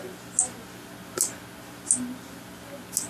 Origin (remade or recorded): recorded